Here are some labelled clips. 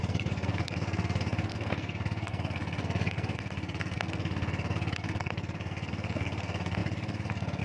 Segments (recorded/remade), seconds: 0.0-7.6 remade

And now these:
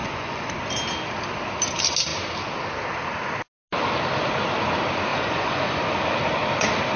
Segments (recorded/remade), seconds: 0.0-0.5 remade; 0.5-5.1 recorded; 5.1-5.8 remade; 5.8-7.0 recorded

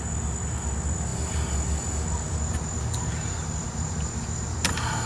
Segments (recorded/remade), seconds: 0.0-5.1 recorded

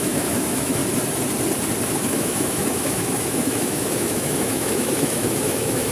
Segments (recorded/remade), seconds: 0.0-0.8 remade; 0.8-1.9 recorded; 1.9-5.9 remade

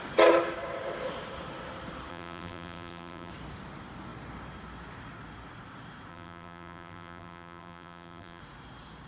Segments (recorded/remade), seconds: 0.0-2.1 recorded; 2.1-3.3 remade; 3.3-6.1 recorded; 6.1-8.4 remade; 8.4-9.1 recorded

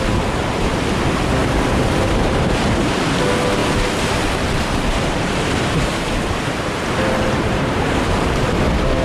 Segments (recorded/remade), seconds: 0.0-1.4 recorded; 1.4-2.9 remade; 2.9-3.6 recorded; 3.6-8.3 remade; 8.3-9.0 recorded